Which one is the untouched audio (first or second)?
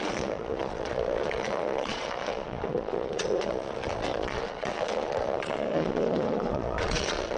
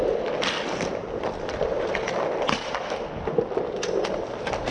second